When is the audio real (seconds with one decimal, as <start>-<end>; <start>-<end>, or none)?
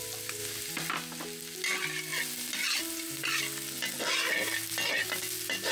0.0-5.7